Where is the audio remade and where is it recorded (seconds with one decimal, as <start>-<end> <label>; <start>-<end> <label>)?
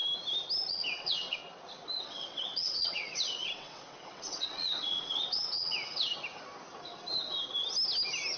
0.0-0.7 recorded; 0.7-1.4 remade; 1.4-2.0 recorded; 2.0-6.1 remade; 6.1-8.4 recorded